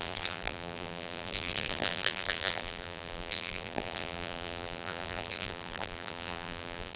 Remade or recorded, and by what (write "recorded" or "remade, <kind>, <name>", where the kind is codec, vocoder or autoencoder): remade, vocoder, BigVGAN v2